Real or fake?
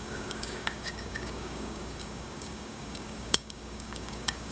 fake